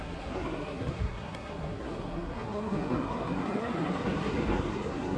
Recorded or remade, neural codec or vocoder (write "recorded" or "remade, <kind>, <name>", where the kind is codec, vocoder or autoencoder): remade, codec, SNAC